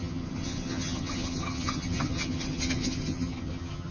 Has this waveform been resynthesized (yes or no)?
yes